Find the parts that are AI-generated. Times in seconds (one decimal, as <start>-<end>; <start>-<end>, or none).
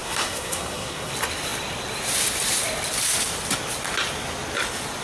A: 0.0-1.1